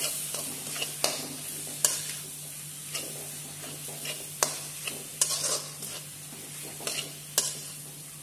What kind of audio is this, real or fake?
real